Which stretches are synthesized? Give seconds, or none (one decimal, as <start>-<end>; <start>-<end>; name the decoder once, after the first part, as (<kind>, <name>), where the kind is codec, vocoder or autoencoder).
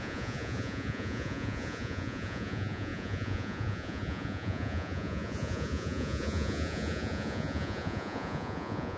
0.0-9.0 (vocoder, Vocos)